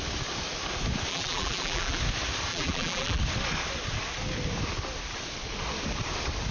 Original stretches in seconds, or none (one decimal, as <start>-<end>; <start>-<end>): 0.0-1.1; 2.0-2.5; 3.2-6.5

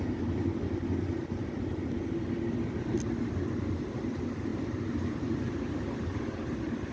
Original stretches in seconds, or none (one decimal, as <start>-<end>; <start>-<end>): 0.0-4.5

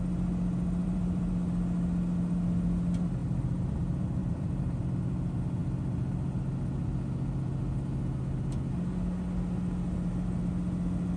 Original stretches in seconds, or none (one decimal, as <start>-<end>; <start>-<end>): 0.0-0.8; 1.3-3.2; 3.8-4.2; 4.8-11.2

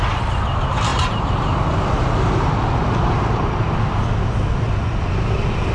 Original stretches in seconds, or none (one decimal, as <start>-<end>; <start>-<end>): 0.0-0.9; 4.1-5.7

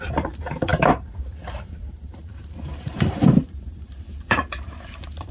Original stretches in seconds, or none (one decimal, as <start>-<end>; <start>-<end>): none

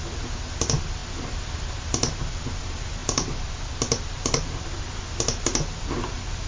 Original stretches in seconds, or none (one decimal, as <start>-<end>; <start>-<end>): 0.0-3.0; 4.7-6.5

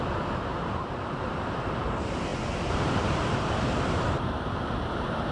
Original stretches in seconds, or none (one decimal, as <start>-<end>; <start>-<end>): none

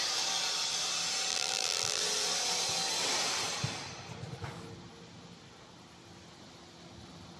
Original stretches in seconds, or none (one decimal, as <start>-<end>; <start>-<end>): 0.0-1.3; 2.0-7.4